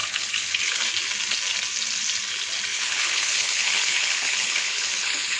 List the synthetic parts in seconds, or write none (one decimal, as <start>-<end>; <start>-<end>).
0.0-0.8; 2.7-5.4